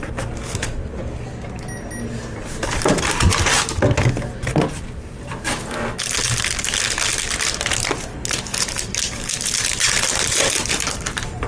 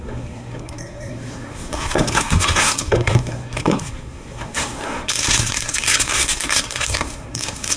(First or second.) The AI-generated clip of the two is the second